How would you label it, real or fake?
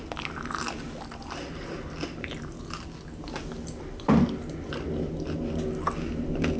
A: real